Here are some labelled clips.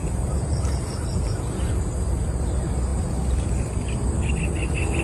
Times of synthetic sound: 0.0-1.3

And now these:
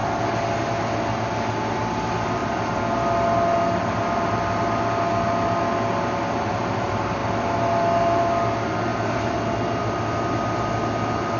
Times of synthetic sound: none

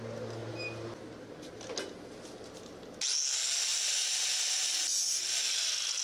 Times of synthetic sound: none

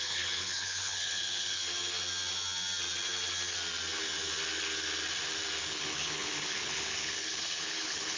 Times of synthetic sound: 0.0-1.6; 5.6-8.2

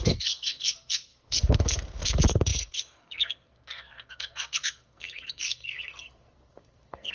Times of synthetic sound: 0.0-7.1